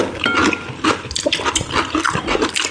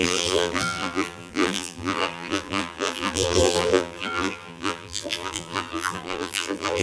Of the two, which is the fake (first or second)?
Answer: second